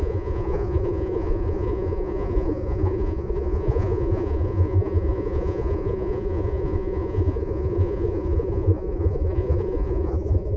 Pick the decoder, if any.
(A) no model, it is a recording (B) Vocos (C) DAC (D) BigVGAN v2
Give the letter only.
B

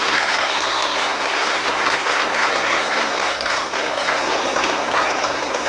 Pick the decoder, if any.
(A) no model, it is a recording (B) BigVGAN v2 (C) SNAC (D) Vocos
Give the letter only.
C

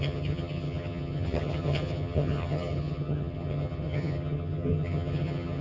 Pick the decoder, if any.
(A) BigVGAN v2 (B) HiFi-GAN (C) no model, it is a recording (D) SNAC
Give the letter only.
B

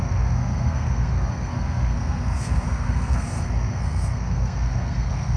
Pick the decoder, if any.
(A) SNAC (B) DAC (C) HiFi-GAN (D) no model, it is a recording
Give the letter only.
A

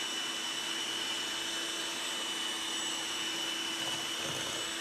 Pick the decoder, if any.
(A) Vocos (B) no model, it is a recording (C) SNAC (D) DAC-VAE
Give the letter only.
B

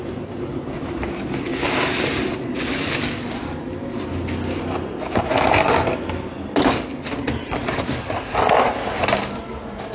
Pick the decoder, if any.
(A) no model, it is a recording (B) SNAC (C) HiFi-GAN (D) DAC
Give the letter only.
A